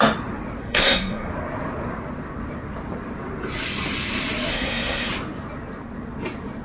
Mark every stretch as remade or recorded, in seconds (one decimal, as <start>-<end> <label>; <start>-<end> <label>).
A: 0.0-0.6 recorded; 0.6-1.3 remade; 1.3-4.5 recorded; 4.5-5.1 remade; 5.1-6.6 recorded